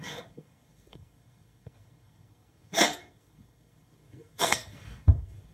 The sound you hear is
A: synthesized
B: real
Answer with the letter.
A